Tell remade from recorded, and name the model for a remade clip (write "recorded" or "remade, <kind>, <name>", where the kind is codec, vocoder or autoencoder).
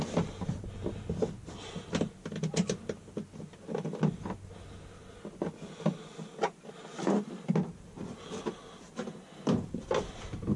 recorded